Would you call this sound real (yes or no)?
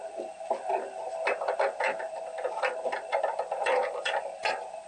no